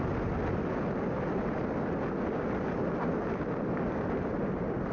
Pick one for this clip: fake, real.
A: real